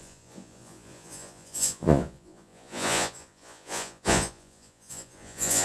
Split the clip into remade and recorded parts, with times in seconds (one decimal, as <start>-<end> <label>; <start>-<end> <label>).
0.0-5.6 remade